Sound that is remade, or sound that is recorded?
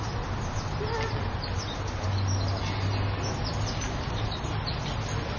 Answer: recorded